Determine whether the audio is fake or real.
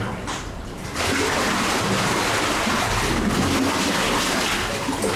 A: real